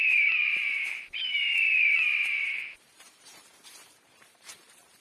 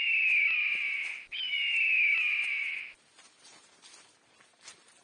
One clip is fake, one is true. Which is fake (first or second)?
first